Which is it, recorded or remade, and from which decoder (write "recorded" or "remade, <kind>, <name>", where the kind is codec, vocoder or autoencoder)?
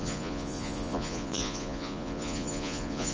remade, vocoder, Vocos